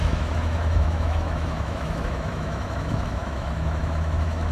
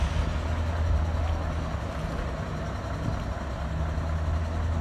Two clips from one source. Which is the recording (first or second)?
second